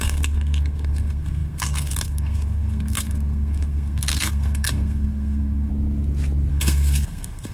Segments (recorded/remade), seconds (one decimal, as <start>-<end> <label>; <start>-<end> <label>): 0.0-5.7 remade; 5.7-6.5 recorded; 6.5-7.5 remade